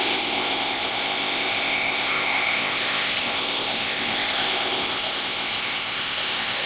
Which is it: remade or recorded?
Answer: remade